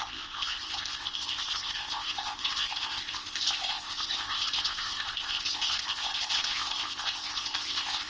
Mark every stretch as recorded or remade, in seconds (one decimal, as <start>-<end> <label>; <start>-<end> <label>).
0.0-8.1 remade